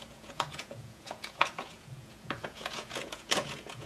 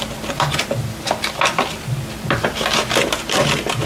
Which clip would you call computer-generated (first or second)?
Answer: first